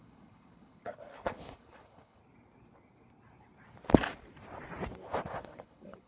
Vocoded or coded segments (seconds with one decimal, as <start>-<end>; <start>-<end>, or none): 0.0-2.2; 5.4-6.1